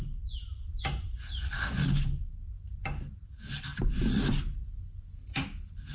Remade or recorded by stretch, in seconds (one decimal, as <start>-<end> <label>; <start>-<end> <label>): 0.0-5.9 recorded